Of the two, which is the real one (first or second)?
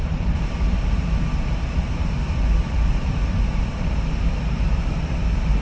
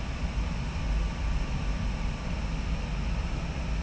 second